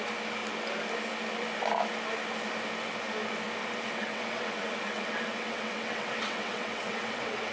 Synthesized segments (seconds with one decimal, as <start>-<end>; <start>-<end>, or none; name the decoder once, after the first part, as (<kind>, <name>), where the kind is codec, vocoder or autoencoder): 3.6-7.5 (vocoder, WaveNeXt)